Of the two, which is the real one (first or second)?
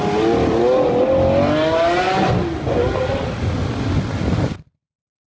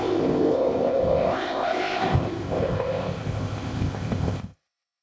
first